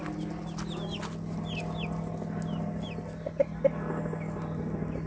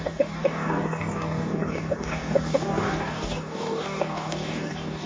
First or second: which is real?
first